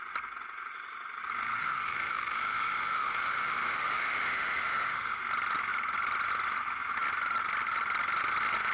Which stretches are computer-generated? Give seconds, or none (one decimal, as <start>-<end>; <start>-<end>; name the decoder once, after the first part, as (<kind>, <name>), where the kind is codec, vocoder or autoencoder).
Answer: 1.6-5.2 (autoencoder, DAC-VAE)